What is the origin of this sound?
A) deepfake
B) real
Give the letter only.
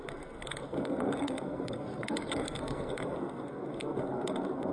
A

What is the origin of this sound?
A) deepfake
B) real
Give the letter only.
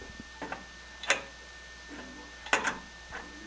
B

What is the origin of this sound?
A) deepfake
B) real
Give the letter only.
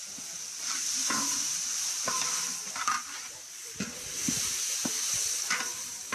A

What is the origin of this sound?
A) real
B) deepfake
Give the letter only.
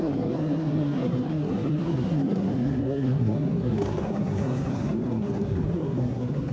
B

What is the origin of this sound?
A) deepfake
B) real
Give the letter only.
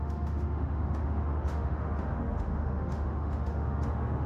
A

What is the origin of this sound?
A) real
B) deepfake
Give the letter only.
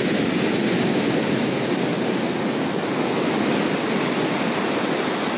A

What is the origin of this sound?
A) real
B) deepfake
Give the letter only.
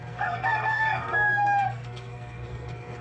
B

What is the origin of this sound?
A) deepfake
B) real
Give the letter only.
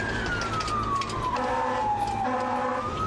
B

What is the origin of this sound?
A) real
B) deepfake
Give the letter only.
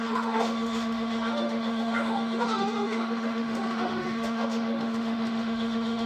B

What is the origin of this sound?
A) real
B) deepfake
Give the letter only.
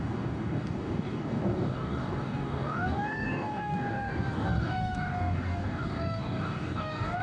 B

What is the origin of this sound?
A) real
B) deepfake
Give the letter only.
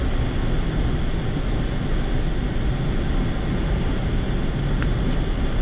A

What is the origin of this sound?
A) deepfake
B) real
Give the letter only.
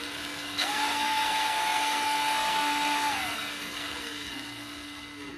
A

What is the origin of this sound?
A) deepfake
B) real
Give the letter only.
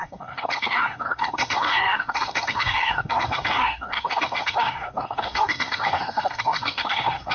A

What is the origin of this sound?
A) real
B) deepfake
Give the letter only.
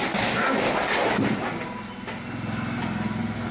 A